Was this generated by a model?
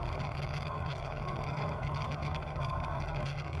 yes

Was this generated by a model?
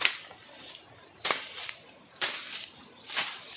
yes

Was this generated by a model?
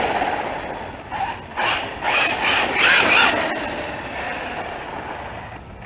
no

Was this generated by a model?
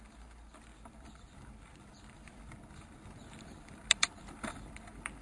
yes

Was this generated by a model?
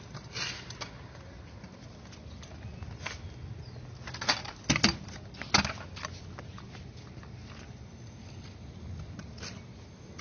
no